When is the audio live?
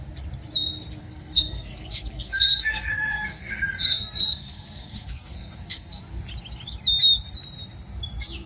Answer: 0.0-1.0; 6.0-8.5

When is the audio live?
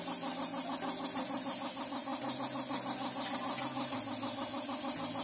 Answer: 0.0-5.2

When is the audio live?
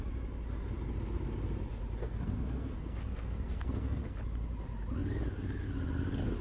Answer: 0.0-2.0; 4.2-6.4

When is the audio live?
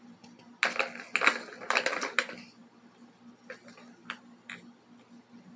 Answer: 0.0-5.6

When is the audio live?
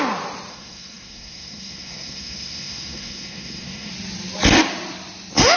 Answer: 0.0-0.5; 3.9-5.6